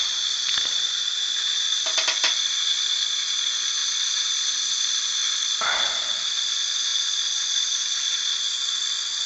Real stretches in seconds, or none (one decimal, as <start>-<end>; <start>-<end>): 0.0-9.3